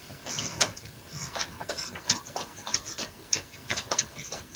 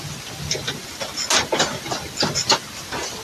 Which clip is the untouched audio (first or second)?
second